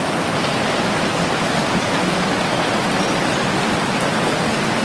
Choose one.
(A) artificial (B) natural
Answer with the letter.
B